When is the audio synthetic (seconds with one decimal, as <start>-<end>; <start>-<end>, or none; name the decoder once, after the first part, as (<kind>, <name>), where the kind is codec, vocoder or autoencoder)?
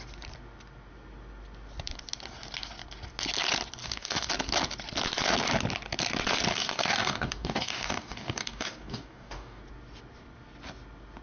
3.8-4.3 (codec, DAC); 6.5-9.6